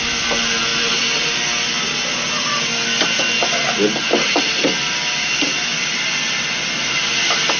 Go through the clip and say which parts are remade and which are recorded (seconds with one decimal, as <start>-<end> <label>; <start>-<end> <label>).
0.0-7.6 recorded